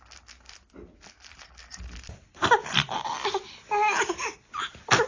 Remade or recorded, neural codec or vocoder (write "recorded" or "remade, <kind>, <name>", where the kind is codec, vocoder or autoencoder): recorded